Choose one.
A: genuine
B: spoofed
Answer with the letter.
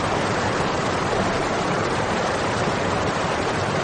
B